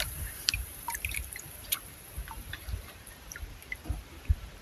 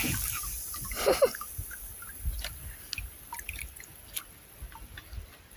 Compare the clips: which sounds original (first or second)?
second